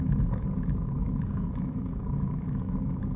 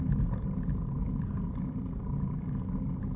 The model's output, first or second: first